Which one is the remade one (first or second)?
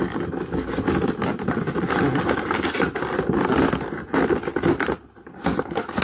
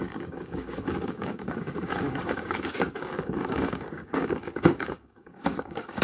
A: second